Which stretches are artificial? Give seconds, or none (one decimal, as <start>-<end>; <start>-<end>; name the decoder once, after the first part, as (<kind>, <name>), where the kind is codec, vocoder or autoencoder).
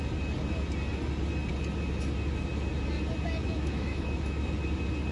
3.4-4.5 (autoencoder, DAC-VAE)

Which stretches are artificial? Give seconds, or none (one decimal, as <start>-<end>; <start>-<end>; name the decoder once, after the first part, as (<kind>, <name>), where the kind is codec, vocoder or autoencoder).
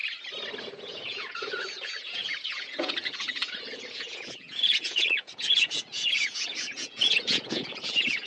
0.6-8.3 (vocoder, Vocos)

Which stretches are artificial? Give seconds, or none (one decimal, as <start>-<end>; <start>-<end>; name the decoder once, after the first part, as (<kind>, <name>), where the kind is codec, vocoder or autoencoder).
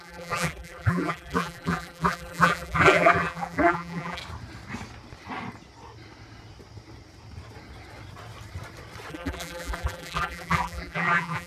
0.0-4.2 (vocoder, BigVGAN v2); 9.1-11.5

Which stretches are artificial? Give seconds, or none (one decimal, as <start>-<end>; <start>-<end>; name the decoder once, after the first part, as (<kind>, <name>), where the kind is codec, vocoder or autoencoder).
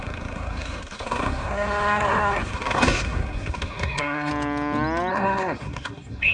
0.0-4.3 (codec, SNAC); 5.1-6.3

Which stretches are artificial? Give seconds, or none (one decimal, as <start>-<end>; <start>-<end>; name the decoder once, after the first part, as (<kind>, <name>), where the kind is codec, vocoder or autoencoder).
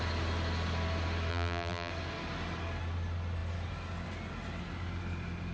1.3-1.9 (vocoder, BigVGAN v2)